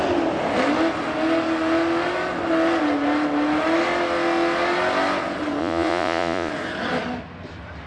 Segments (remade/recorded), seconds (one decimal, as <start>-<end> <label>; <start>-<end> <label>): 0.0-5.6 recorded; 5.6-6.5 remade; 6.5-7.9 recorded